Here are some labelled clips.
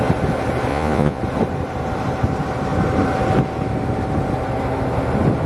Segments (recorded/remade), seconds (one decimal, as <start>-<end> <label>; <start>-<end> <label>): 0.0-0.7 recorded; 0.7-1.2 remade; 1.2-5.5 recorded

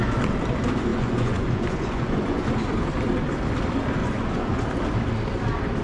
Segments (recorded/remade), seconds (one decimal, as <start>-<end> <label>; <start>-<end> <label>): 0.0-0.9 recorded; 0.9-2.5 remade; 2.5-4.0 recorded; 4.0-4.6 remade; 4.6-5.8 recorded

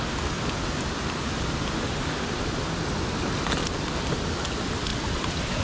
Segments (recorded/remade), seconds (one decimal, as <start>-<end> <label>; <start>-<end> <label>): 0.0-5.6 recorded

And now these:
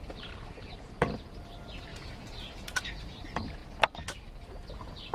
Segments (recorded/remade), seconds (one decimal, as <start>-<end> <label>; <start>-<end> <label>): 0.0-1.9 recorded; 1.9-2.8 remade; 2.8-5.1 recorded